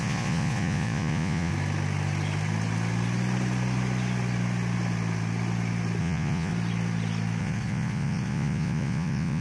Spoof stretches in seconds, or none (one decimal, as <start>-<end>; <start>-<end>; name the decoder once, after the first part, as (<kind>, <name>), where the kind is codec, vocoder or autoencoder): 0.0-1.5 (vocoder, Vocos); 6.0-6.5; 7.4-9.4